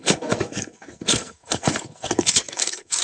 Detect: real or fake fake